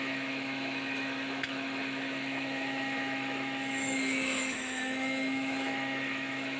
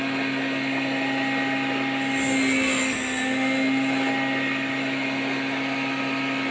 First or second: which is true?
second